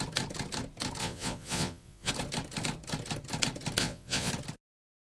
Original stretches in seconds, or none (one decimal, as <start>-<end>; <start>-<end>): 0.0-1.0; 2.1-3.8; 4.3-5.0